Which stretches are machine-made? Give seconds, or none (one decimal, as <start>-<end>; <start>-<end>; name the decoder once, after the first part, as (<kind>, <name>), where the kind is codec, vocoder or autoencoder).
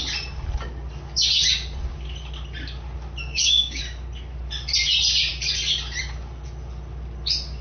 3.3-3.8 (codec, DAC)